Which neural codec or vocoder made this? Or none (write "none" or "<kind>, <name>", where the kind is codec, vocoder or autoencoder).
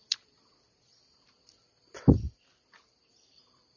none